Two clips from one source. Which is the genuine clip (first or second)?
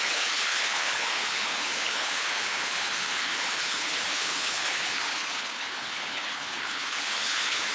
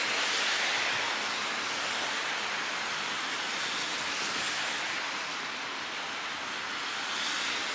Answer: second